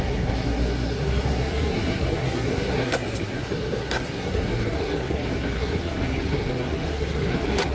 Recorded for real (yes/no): no